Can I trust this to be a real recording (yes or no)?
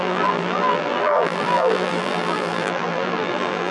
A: no